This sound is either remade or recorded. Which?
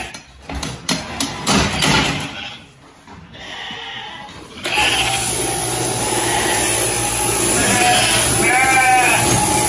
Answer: recorded